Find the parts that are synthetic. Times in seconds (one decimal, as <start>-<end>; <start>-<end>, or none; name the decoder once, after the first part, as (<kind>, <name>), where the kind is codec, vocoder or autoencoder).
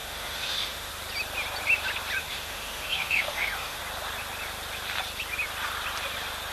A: 0.0-0.9 (autoencoder, DAC-VAE); 2.2-3.8